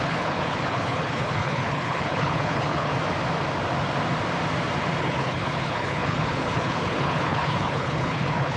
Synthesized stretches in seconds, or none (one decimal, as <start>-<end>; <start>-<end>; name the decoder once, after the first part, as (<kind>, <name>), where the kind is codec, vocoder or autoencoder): 0.0-2.9 (codec, HILCodec); 5.0-8.6